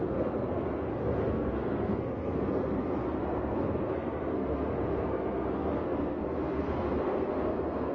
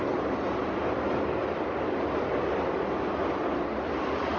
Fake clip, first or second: first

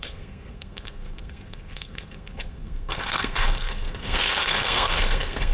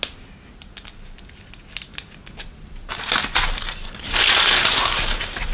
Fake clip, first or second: first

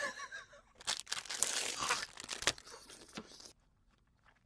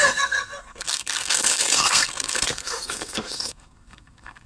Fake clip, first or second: second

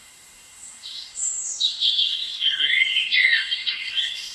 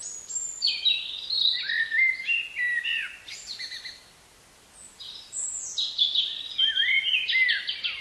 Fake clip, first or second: first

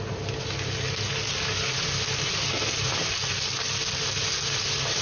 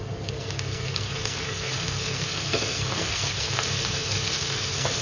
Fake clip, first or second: second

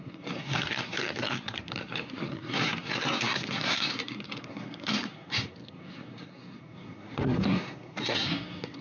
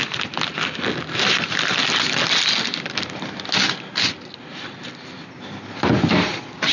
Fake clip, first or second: first